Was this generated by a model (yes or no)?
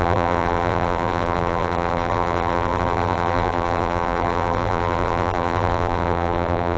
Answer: yes